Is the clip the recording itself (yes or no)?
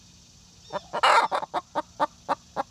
yes